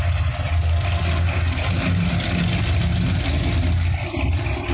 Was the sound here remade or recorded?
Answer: recorded